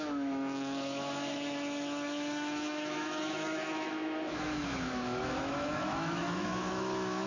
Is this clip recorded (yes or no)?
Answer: no